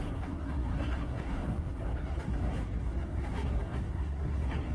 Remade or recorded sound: remade